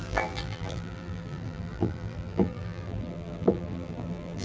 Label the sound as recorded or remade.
remade